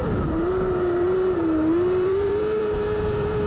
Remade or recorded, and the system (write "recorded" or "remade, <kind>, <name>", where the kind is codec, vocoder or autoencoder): remade, vocoder, BigVGAN v2